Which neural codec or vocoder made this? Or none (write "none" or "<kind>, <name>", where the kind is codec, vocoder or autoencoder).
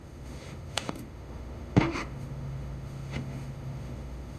autoencoder, DAC-VAE